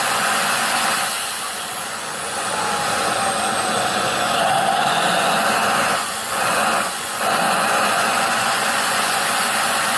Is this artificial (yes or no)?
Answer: yes